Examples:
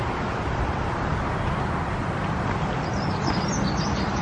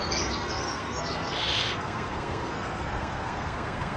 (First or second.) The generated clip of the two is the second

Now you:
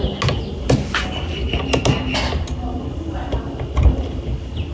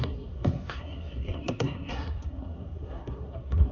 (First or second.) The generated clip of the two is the second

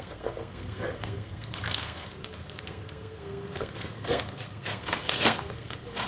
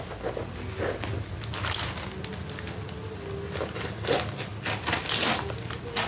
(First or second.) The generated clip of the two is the first